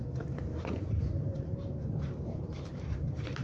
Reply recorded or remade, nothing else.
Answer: remade